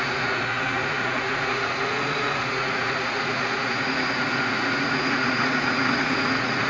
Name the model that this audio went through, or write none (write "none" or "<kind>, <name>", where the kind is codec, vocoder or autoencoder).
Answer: vocoder, Vocos